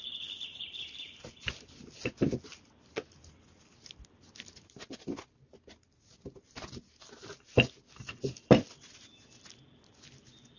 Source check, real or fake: real